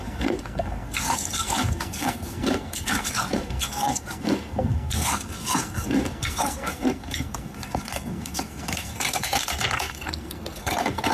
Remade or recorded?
remade